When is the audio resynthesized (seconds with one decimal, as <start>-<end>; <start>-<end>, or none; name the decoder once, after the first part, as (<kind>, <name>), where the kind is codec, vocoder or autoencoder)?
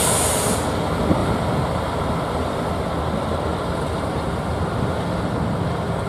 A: 1.2-3.0 (vocoder, BigVGAN v2); 3.5-4.7